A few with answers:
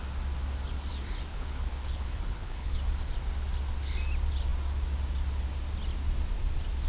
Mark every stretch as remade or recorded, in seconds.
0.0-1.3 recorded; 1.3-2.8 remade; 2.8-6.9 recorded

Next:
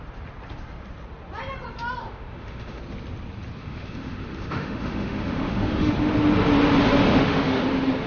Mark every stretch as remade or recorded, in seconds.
0.0-2.0 recorded; 2.0-2.8 remade; 2.8-3.6 recorded; 3.6-5.9 remade; 5.9-7.1 recorded; 7.1-7.6 remade; 7.6-8.1 recorded